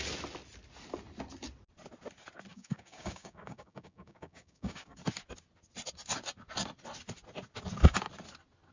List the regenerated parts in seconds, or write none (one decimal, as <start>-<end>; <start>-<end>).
2.5-5.0